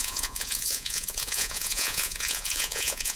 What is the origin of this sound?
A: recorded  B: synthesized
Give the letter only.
B